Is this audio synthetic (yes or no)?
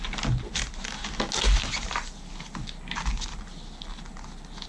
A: no